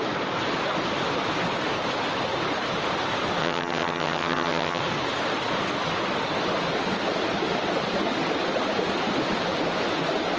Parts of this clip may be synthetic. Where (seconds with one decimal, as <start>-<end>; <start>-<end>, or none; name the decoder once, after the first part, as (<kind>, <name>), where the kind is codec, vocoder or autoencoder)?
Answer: 3.4-4.8 (vocoder, HiFi-GAN)